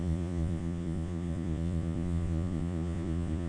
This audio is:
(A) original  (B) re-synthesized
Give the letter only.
B